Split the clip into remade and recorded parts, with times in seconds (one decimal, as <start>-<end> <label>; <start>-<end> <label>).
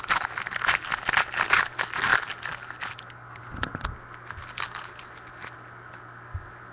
0.0-6.7 recorded